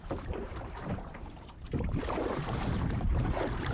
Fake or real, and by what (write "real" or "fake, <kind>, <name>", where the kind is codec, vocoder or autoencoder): fake, vocoder, BigVGAN v2